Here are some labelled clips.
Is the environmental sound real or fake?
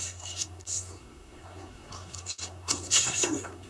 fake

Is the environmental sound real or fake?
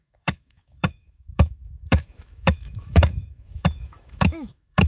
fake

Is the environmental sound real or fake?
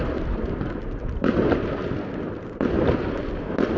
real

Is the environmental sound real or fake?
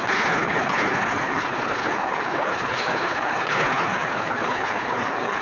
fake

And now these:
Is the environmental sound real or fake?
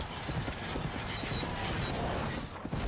real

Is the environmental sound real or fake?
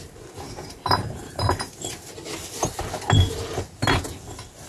real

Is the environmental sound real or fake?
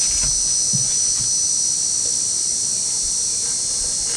real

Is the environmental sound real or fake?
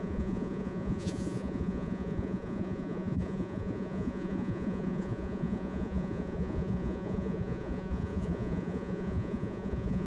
fake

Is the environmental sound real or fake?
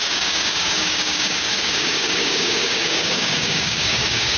fake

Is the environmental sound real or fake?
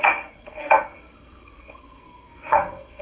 fake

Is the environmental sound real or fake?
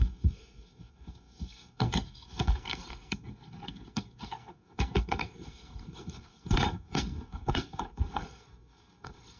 fake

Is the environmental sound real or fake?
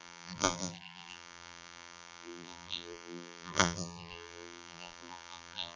fake